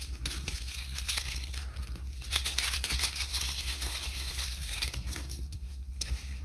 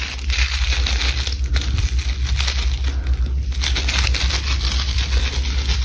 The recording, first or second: second